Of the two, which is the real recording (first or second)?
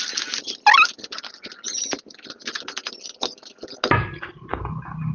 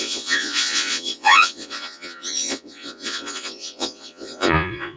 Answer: first